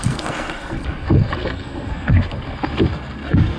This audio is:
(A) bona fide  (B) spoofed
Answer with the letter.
B